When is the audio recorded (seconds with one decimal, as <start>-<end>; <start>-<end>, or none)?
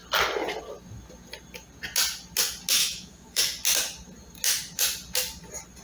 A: 0.0-2.8; 3.4-5.8